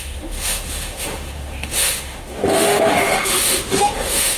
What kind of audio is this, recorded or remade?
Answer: remade